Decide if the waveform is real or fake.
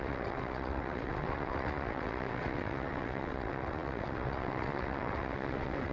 fake